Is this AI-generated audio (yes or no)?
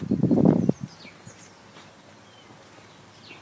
no